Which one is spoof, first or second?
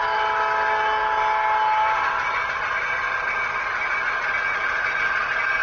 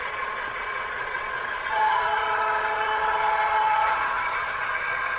second